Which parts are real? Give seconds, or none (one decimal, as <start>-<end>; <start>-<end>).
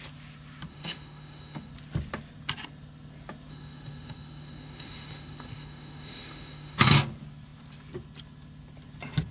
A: 0.0-0.7; 1.7-3.5; 6.9-9.3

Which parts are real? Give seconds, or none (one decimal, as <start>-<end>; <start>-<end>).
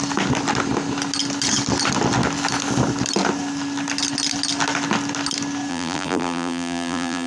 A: 0.0-5.7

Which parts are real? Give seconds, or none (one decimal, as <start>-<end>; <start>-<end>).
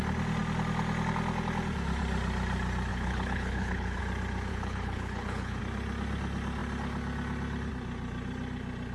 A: 0.0-2.9; 4.0-4.5; 5.6-8.9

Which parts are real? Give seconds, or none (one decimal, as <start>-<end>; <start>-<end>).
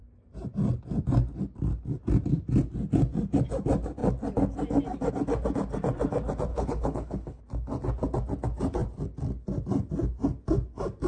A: 0.0-6.5; 7.4-11.1